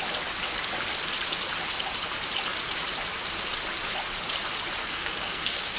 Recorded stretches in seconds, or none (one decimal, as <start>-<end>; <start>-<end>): 0.0-4.8